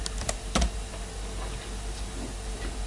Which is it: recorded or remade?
recorded